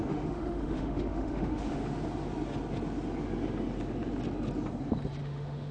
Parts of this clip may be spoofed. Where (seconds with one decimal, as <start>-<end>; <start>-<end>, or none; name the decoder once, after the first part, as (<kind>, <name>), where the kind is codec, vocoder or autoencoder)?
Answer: 0.0-1.8 (autoencoder, DAC-VAE); 5.2-5.7